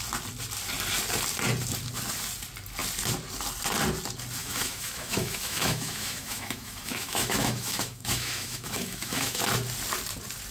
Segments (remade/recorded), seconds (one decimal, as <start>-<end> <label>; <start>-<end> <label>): 0.0-4.4 recorded; 4.4-9.4 remade; 9.4-10.5 recorded